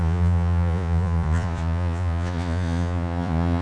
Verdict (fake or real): fake